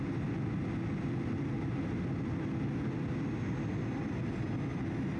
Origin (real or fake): real